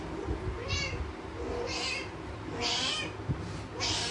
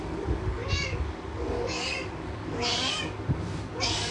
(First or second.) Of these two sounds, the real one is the first